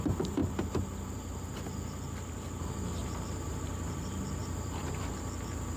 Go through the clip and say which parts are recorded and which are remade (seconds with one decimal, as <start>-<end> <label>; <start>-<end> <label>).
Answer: 0.0-4.4 recorded; 4.4-4.9 remade; 4.9-5.8 recorded